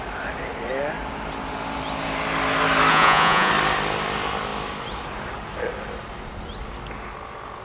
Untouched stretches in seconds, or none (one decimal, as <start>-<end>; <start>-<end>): 0.0-2.9; 3.5-7.6

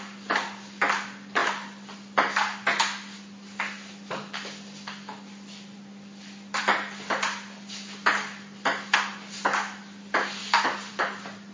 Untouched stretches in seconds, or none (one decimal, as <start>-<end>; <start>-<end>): 0.0-11.5

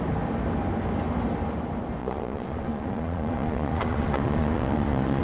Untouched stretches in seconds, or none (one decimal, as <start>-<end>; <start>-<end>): 0.0-2.0

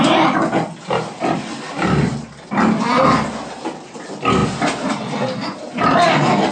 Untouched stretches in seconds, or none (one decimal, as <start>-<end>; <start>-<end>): 0.0-6.5

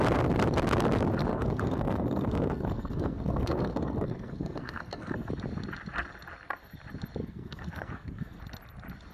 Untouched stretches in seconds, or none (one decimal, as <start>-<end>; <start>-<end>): 0.0-1.3; 5.3-7.2; 8.4-9.1

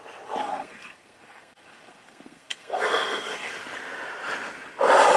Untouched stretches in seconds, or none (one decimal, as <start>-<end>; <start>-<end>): 0.0-0.4; 3.5-5.2

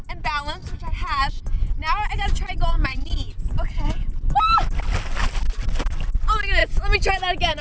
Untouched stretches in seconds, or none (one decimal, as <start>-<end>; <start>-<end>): 0.0-0.6; 1.2-2.9; 3.6-5.2; 5.8-7.6

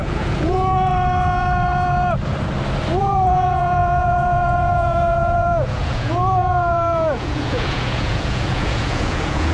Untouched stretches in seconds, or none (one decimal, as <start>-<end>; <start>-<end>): 0.9-3.0